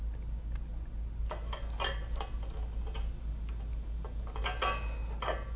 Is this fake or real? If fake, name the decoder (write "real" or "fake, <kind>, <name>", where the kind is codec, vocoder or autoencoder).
real